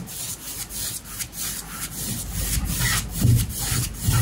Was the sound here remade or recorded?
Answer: recorded